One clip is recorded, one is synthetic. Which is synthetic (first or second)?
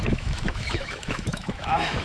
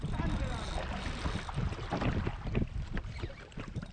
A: first